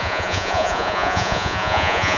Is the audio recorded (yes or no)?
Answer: no